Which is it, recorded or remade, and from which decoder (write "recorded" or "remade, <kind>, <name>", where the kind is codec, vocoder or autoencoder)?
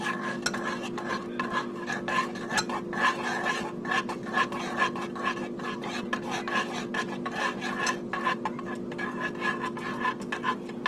recorded